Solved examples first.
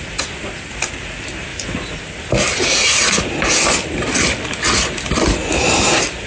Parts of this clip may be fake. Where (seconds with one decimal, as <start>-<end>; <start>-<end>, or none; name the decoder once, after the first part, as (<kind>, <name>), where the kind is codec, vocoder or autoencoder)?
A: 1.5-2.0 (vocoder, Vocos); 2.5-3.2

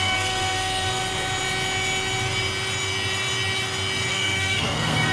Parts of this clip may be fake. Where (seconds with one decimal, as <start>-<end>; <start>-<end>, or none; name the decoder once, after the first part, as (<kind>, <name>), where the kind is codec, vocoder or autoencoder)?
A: 0.0-1.0 (codec, SNAC); 4.1-5.1

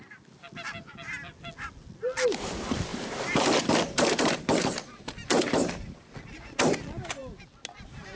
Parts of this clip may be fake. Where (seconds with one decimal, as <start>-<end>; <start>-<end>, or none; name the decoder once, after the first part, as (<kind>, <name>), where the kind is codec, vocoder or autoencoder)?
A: 2.9-6.1 (vocoder, BigVGAN v2)

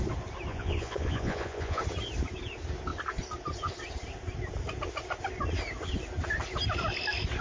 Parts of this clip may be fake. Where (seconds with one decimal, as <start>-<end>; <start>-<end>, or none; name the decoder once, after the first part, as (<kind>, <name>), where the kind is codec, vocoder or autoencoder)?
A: 0.5-1.8 (vocoder, Vocos)